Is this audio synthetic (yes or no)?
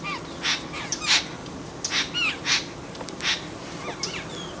no